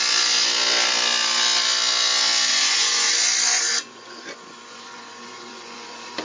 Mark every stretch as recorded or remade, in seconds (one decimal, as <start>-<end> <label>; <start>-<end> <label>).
0.0-2.5 recorded; 2.5-3.1 remade; 3.1-3.5 recorded; 3.5-6.2 remade